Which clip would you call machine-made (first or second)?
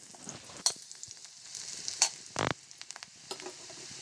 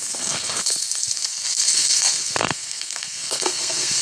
second